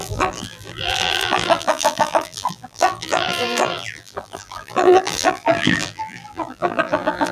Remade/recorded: remade